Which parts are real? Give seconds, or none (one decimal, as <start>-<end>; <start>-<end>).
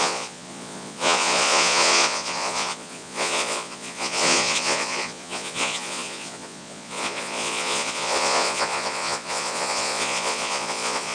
none